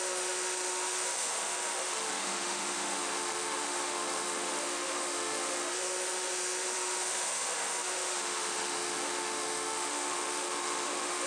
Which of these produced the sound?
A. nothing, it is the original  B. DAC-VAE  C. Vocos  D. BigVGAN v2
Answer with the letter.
B